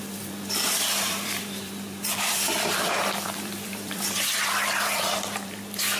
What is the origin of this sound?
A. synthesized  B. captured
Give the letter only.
A